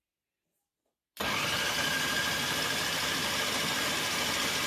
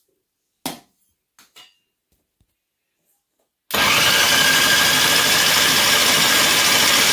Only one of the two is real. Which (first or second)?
second